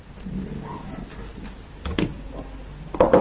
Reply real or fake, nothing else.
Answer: real